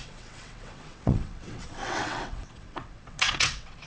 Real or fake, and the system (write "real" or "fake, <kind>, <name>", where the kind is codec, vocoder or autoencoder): fake, vocoder, WaveNeXt